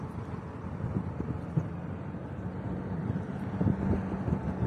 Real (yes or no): yes